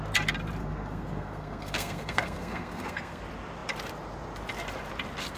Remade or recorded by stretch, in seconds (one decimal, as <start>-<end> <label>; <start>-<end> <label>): 0.0-0.6 recorded; 0.6-3.2 remade; 3.2-5.4 recorded